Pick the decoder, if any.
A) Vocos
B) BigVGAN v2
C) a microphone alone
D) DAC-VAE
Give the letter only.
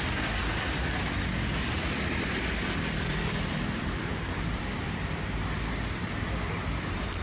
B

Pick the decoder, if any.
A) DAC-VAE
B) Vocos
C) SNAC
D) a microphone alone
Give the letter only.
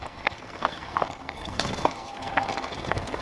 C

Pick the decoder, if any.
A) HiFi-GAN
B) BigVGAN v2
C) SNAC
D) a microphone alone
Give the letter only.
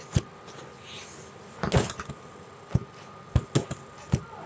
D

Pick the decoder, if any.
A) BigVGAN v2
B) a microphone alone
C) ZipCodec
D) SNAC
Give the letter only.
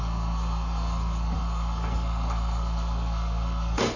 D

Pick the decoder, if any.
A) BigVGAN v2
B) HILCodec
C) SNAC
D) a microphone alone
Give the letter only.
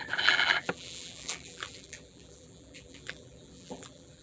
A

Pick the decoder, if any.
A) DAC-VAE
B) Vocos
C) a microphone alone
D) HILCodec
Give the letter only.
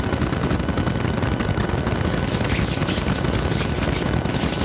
C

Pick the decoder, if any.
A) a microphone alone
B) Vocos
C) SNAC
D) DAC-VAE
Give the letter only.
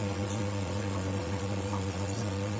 B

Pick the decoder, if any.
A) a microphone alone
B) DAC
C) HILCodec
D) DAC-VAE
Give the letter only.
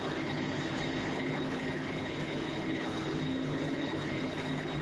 C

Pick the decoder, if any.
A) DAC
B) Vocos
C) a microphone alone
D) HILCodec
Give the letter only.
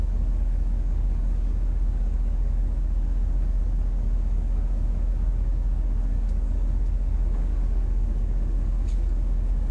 A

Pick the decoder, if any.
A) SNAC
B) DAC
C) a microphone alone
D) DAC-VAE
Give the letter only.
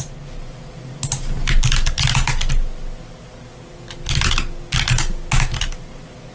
C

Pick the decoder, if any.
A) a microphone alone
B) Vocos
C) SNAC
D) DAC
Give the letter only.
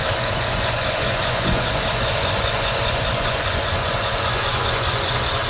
B